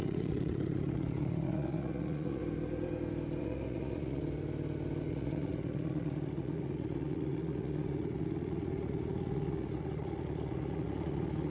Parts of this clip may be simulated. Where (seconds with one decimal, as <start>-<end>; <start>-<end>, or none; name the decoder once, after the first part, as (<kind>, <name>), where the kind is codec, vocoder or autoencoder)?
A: 0.0-2.4 (vocoder, Vocos); 3.4-4.2; 5.1-11.5